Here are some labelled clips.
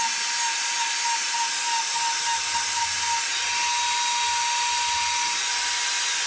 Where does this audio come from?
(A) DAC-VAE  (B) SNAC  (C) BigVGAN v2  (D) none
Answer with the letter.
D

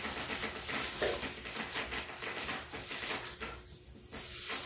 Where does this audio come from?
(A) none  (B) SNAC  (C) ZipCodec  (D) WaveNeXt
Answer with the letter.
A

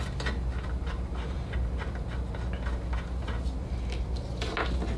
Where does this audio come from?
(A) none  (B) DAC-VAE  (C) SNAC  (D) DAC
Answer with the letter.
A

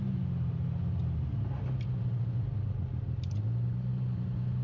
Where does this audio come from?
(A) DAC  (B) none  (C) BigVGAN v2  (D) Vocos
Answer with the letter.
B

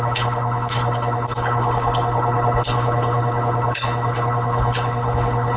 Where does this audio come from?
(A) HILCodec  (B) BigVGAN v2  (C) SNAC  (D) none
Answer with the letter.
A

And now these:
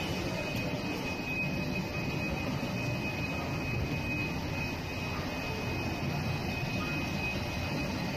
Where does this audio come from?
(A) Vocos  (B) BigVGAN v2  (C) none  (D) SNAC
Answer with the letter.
C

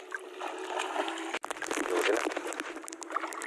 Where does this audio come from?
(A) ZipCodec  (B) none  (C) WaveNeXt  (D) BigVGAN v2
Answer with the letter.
B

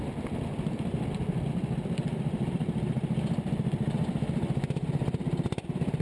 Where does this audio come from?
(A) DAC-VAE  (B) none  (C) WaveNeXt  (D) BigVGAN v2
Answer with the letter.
D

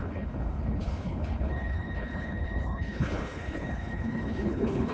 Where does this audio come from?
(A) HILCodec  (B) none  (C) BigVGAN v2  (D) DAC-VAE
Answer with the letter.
A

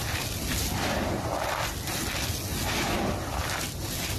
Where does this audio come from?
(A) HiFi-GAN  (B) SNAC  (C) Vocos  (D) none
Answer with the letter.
D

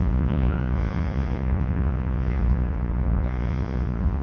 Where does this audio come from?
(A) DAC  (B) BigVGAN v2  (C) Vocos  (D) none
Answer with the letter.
C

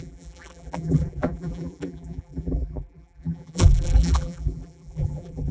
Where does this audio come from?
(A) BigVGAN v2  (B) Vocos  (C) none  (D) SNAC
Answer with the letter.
A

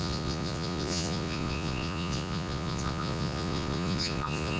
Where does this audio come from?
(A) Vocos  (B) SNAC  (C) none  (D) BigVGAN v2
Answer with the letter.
A